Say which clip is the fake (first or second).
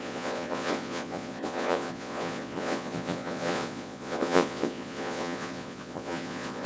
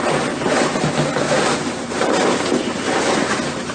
first